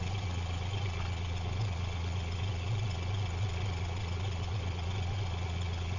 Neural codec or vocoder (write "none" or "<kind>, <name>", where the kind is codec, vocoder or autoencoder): vocoder, Vocos